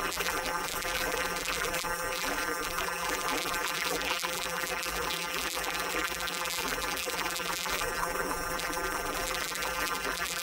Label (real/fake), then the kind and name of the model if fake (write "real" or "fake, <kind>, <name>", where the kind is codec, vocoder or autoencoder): fake, vocoder, BigVGAN v2